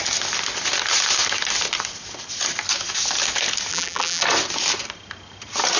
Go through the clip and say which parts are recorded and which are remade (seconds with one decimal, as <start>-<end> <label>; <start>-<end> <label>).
0.0-3.7 recorded; 3.7-4.2 remade; 4.2-5.8 recorded